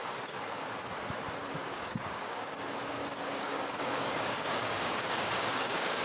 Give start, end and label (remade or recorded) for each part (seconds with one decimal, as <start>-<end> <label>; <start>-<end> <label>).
0.0-0.6 remade; 0.6-1.6 recorded; 1.6-2.4 remade; 2.4-3.0 recorded; 3.0-6.0 remade